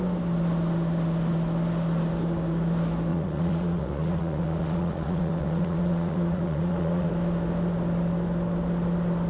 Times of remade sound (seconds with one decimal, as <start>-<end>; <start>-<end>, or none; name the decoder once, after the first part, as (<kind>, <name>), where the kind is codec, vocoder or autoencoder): 3.1-7.1 (vocoder, Vocos)